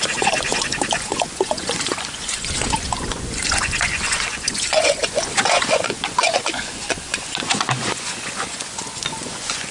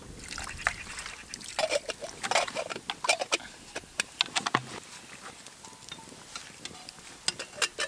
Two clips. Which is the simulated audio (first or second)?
first